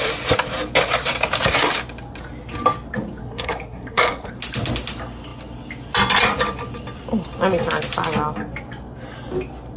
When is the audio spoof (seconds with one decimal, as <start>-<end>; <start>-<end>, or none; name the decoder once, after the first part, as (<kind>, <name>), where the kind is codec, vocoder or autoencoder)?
3.2-4.3 (codec, SNAC)